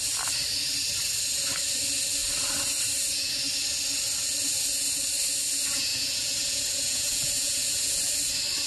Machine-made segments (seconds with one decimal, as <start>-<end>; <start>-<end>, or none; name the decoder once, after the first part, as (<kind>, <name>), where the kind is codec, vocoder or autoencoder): 5.9-8.1 (vocoder, Vocos)